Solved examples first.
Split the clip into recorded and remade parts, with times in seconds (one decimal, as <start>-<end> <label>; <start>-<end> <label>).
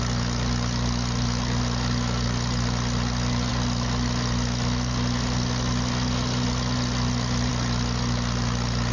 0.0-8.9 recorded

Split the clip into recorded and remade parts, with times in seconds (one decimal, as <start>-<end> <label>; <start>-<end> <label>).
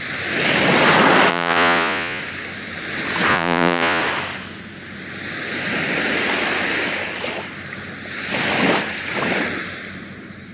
0.0-1.3 recorded; 1.3-2.2 remade; 2.2-3.3 recorded; 3.3-4.0 remade; 4.0-10.5 recorded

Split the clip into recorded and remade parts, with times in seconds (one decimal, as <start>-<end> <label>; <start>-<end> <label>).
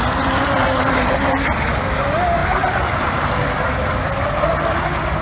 0.0-5.2 recorded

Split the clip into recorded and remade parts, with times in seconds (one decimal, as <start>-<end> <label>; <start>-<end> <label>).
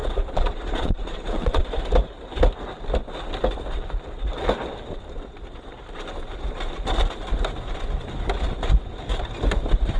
0.0-1.6 remade; 1.6-10.0 recorded